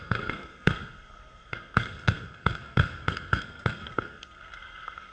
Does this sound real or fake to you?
fake